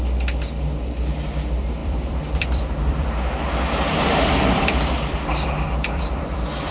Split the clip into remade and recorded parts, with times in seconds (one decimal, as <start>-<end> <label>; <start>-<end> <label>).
0.0-1.8 recorded; 1.8-3.3 remade; 3.3-3.9 recorded; 3.9-6.7 remade